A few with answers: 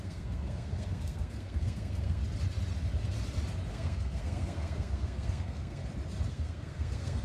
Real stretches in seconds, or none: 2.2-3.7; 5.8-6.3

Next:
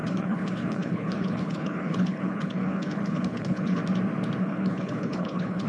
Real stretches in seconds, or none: 3.8-4.4